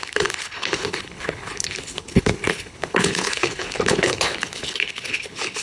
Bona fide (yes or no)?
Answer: no